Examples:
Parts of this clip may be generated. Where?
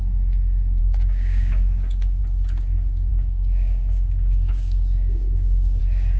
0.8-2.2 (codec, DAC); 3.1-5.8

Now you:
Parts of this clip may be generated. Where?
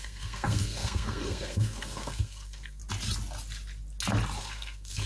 0.0-2.8 (codec, SNAC); 4.4-5.1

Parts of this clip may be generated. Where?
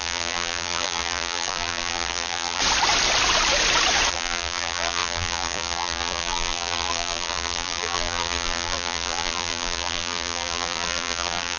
0.0-2.6 (vocoder, BigVGAN v2); 4.1-11.6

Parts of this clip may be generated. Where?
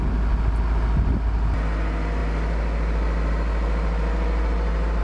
none